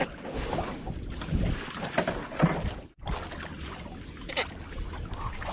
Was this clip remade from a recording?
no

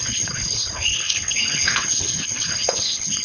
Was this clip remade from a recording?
yes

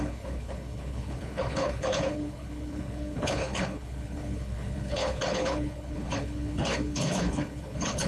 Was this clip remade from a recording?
yes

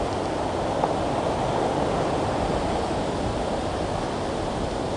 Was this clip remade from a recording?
no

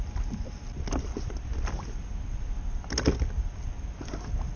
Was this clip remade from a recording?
no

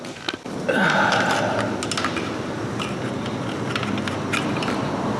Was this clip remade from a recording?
no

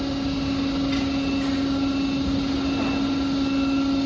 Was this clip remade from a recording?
no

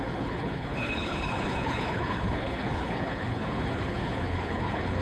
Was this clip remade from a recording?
yes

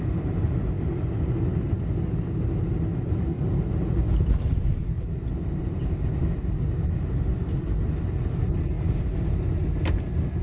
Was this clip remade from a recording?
no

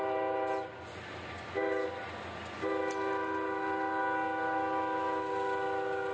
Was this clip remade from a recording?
no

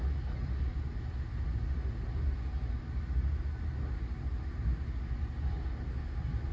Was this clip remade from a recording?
no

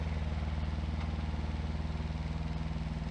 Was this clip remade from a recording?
no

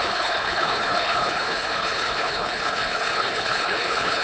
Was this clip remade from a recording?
yes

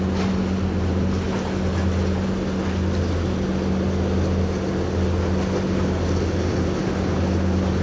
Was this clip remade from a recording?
no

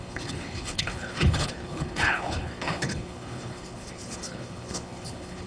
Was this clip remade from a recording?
yes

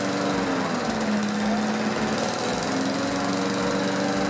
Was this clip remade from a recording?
no